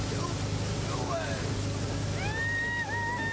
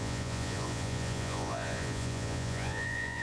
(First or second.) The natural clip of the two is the first